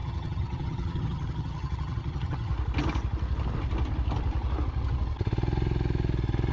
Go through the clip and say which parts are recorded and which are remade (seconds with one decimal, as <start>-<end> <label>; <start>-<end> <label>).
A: 0.0-2.5 remade; 2.5-6.5 recorded

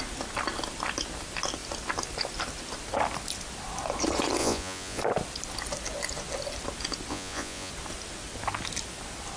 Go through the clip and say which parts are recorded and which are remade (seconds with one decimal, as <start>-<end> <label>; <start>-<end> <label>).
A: 0.0-4.4 recorded; 4.4-5.0 remade; 5.0-7.1 recorded; 7.1-7.7 remade; 7.7-9.4 recorded

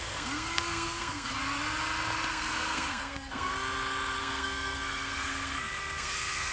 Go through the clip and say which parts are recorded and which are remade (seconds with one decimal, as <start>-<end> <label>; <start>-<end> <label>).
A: 0.0-1.3 remade; 1.3-2.3 recorded; 2.3-3.5 remade; 3.5-4.2 recorded; 4.2-6.5 remade